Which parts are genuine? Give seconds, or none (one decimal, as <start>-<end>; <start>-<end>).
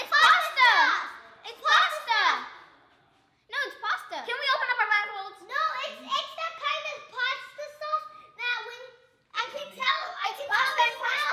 0.0-9.3